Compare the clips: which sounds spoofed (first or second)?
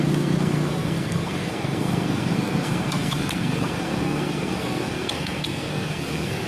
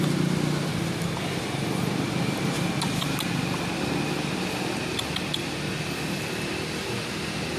first